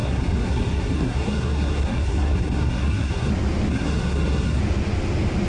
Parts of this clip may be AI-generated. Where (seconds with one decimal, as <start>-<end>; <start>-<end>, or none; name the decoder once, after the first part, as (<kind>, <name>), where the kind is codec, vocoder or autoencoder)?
0.0-3.3 (codec, SNAC); 3.7-4.6